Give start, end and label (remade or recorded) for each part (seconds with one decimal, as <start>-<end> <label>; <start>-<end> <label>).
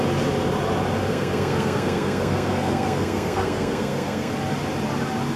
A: 0.0-1.1 recorded; 1.1-4.3 remade; 4.3-5.4 recorded